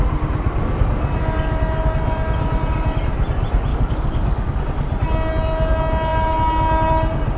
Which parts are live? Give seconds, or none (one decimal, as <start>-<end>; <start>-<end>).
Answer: 0.0-3.7; 4.6-7.4